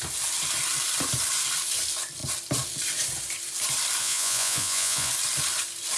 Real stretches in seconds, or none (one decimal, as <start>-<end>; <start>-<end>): 0.0-4.0; 5.1-6.0